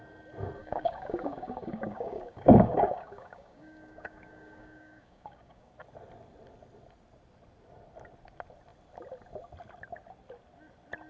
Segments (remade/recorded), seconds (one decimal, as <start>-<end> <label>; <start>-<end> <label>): 0.0-0.6 recorded; 0.6-5.7 remade; 5.7-11.1 recorded